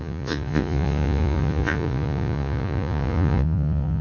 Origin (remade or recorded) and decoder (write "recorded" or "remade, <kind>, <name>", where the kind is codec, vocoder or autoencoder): remade, vocoder, Vocos